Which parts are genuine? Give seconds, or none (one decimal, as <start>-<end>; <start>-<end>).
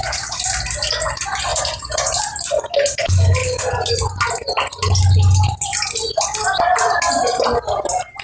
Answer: 0.0-1.5; 2.2-8.2